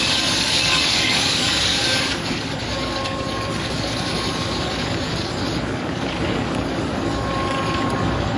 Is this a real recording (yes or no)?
no